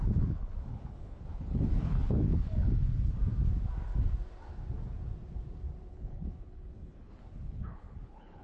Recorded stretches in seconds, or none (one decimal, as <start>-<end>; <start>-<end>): 3.2-5.9